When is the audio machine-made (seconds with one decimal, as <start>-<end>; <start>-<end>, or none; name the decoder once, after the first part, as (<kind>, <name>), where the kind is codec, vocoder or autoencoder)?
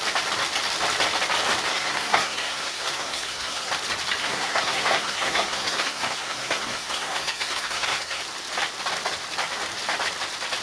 1.7-3.7 (codec, SNAC); 4.2-8.2